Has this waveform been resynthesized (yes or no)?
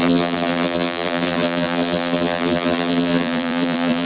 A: yes